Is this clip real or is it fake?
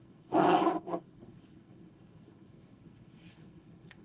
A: fake